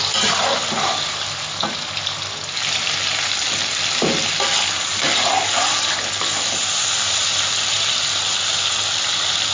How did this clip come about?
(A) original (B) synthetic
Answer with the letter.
A